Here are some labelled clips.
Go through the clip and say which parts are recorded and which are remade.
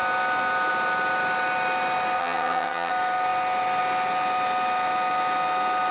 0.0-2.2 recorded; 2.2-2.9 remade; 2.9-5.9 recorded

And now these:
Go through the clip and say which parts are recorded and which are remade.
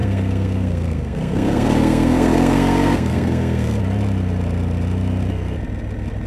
0.0-3.8 remade; 3.8-6.3 recorded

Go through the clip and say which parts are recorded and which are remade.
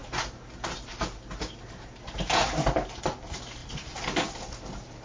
0.0-3.6 recorded; 3.6-4.5 remade; 4.5-5.0 recorded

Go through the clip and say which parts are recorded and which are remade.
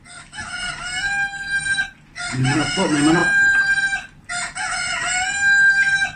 0.0-6.2 recorded